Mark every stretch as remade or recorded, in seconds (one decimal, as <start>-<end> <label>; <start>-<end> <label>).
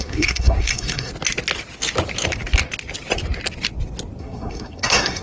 0.0-1.1 remade; 1.1-4.2 recorded; 4.2-5.2 remade